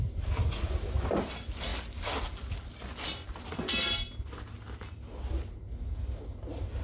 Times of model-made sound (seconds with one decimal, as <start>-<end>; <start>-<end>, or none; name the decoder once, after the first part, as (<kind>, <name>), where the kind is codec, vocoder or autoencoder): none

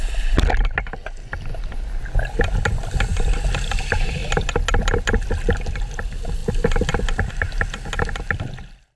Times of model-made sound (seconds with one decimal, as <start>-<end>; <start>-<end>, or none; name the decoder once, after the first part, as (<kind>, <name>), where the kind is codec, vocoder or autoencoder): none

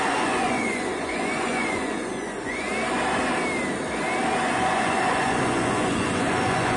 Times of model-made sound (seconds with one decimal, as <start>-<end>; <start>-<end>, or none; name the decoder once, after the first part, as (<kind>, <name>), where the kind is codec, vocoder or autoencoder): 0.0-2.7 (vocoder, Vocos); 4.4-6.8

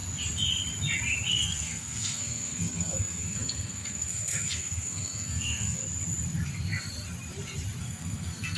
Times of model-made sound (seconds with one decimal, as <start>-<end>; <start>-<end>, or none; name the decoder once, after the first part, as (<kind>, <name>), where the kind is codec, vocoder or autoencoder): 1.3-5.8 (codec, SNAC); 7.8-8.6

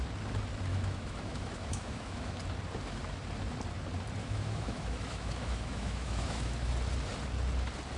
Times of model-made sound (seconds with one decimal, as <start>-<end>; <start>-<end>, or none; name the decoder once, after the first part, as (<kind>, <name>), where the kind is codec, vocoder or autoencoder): 0.7-2.4 (autoencoder, DAC-VAE); 4.2-6.7

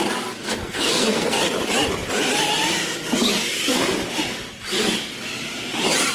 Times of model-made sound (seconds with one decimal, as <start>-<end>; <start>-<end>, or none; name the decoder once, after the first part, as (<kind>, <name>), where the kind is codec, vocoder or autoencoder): 0.4-1.4 (codec, SNAC)